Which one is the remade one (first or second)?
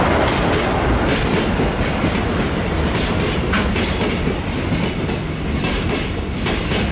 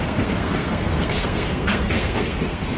second